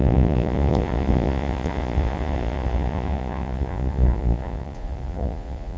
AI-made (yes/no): yes